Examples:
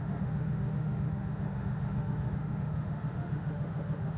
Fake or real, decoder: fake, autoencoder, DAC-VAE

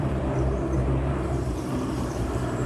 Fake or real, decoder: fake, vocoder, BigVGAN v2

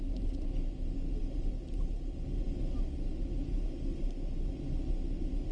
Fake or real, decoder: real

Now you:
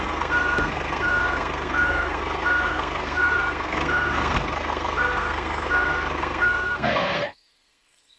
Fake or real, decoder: fake, codec, SNAC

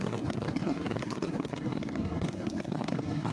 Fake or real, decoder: fake, codec, SNAC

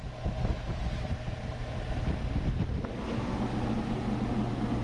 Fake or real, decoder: real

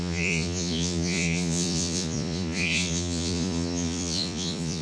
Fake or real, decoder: fake, vocoder, Vocos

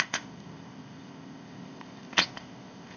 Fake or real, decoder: fake, codec, ZipCodec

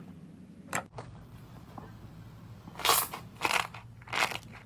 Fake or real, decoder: real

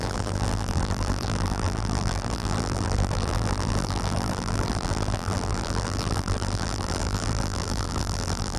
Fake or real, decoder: fake, vocoder, BigVGAN v2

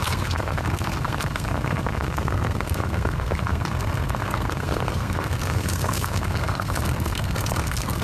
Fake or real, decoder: fake, codec, SNAC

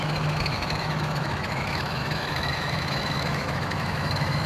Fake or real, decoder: fake, autoencoder, DAC-VAE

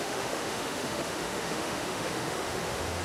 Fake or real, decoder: fake, autoencoder, DAC-VAE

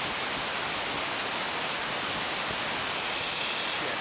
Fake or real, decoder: real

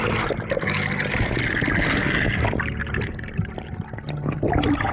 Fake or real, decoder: real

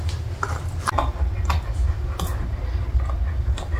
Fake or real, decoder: real